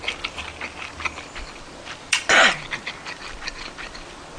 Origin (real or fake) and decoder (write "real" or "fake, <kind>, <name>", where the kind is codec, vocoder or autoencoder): real